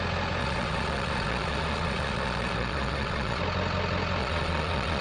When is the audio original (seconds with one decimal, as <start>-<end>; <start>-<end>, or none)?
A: 0.0-0.4; 3.4-4.2